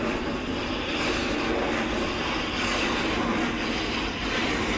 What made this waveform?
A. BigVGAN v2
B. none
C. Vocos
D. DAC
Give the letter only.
B